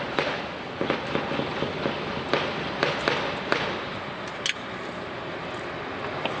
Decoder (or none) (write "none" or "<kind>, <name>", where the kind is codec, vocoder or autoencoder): none